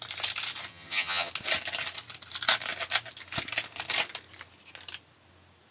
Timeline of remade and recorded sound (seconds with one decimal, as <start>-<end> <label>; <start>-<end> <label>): 0.0-0.7 recorded; 0.7-1.3 remade; 1.3-5.7 recorded